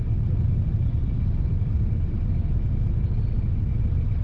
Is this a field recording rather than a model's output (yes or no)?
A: yes